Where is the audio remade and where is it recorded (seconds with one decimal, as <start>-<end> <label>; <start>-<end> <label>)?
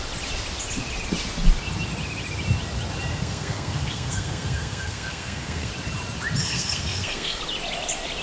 0.0-3.1 recorded; 3.1-5.7 remade; 5.7-6.4 recorded; 6.4-7.4 remade; 7.4-8.2 recorded